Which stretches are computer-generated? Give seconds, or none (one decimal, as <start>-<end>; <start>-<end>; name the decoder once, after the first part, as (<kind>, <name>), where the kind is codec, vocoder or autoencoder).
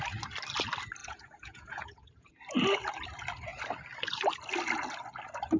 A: 1.0-2.3 (vocoder, Vocos)